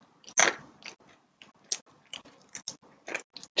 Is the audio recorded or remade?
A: recorded